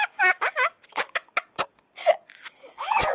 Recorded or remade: remade